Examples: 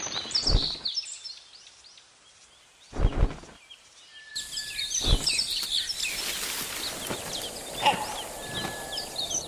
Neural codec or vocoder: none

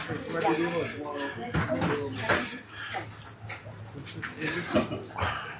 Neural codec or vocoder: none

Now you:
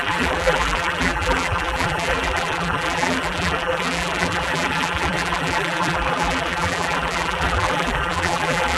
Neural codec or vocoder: vocoder, BigVGAN v2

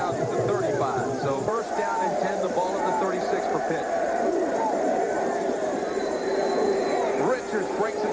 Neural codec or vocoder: vocoder, BigVGAN v2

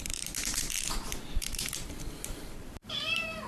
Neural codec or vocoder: vocoder, BigVGAN v2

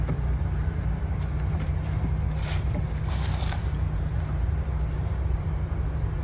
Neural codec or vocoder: vocoder, BigVGAN v2